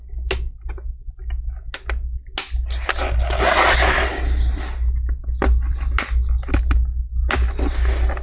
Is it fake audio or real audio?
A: real